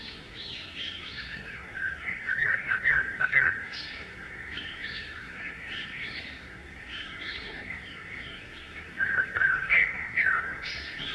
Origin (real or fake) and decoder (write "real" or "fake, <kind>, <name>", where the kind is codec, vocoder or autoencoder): fake, codec, SNAC